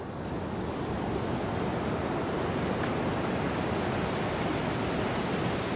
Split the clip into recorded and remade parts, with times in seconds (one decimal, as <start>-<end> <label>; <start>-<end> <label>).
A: 0.0-5.8 recorded